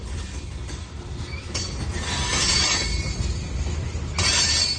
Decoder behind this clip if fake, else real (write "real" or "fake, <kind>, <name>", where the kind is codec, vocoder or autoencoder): real